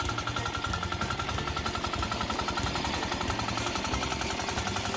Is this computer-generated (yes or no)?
no